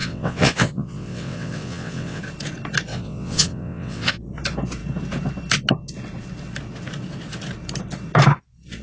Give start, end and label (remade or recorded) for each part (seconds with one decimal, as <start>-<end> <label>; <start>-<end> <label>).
0.0-2.2 remade; 2.2-2.9 recorded; 2.9-4.1 remade; 4.1-8.8 recorded